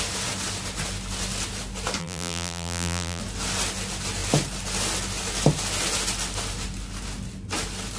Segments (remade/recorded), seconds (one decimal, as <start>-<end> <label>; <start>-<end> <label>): 0.0-2.0 recorded; 2.0-3.2 remade; 3.2-8.0 recorded